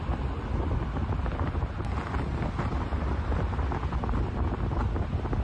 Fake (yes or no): no